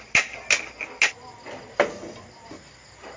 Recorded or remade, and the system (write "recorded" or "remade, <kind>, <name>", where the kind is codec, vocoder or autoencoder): recorded